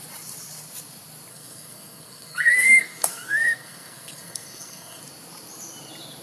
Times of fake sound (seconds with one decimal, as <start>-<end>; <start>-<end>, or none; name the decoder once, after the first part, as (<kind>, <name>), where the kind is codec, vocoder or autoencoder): 1.3-5.0 (codec, SNAC)

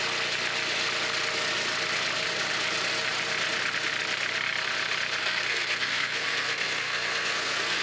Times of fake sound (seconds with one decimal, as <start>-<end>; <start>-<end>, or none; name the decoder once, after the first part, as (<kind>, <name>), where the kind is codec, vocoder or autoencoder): 5.2-7.8 (codec, SNAC)